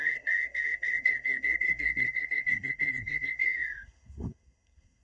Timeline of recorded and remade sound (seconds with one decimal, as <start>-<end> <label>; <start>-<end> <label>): 0.0-5.0 remade